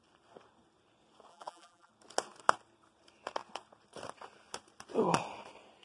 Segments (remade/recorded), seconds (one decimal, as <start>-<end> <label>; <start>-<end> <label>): 0.0-1.3 recorded; 1.3-1.9 remade; 1.9-5.8 recorded